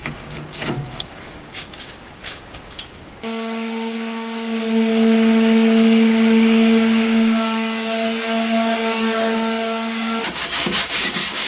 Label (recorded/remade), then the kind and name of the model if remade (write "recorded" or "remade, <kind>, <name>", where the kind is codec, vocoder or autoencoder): remade, codec, DAC